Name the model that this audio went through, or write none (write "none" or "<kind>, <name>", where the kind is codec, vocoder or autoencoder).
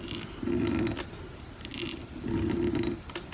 none